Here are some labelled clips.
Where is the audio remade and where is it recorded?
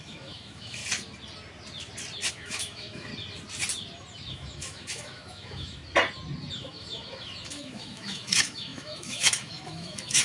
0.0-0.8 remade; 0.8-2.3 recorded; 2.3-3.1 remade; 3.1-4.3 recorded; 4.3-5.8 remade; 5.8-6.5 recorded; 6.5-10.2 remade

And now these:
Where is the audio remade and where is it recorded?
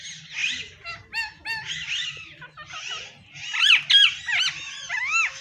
0.0-4.9 recorded; 4.9-5.4 remade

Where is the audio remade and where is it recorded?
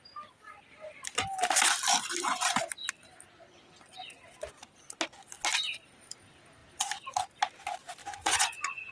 0.0-8.0 recorded; 8.0-8.9 remade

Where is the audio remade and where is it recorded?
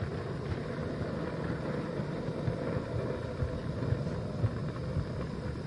0.0-5.7 recorded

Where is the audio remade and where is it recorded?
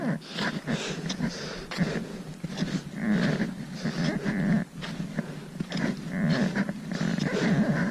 0.0-7.9 recorded